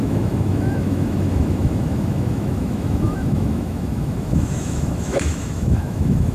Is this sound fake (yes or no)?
yes